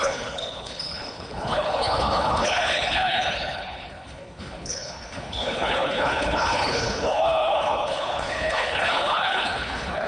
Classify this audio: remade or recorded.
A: remade